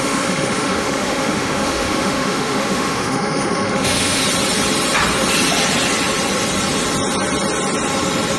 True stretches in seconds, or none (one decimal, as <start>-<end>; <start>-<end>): 4.2-8.4